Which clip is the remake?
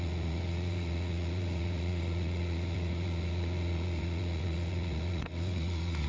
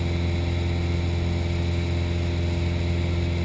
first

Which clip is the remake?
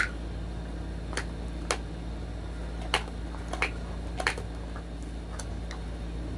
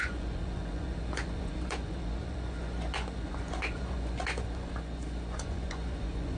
second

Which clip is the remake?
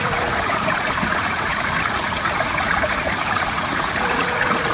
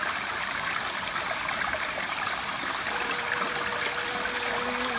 first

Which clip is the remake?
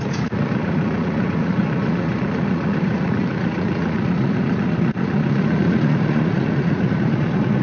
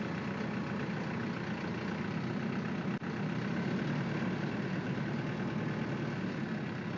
first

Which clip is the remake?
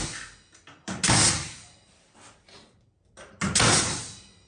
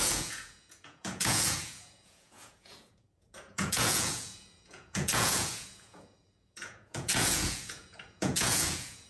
second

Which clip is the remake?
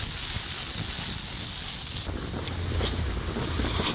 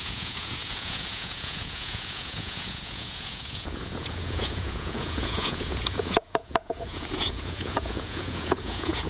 second